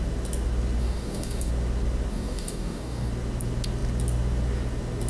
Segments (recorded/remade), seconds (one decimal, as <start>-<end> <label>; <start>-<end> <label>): 0.0-0.8 recorded; 0.8-1.5 remade; 1.5-2.1 recorded; 2.1-3.1 remade; 3.1-5.1 recorded